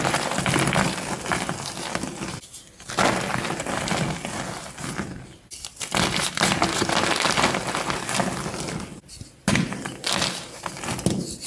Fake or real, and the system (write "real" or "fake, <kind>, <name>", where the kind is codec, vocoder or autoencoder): real